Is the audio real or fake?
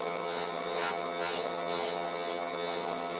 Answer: fake